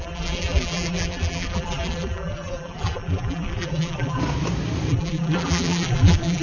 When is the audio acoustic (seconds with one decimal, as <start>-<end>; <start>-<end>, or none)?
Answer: 4.2-4.9